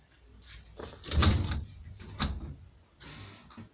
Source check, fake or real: real